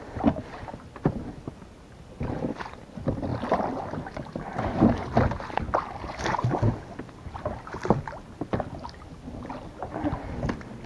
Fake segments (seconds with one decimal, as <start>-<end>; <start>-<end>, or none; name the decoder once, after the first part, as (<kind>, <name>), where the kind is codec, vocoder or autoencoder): none